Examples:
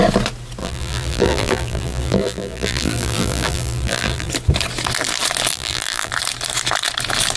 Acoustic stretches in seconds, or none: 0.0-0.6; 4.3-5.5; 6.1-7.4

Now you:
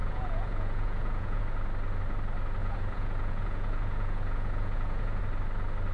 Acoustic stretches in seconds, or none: 1.4-2.6; 5.2-5.9

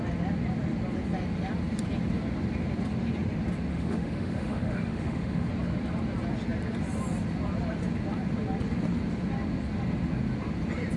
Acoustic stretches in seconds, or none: 0.0-3.7; 5.5-11.0

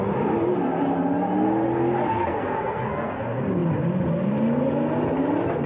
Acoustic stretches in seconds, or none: 0.0-2.0; 3.2-5.7

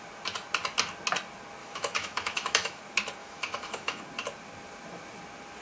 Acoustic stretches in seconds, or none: 0.0-1.6; 2.8-3.2; 4.0-5.6

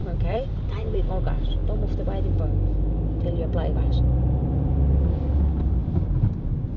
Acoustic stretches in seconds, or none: 1.1-6.8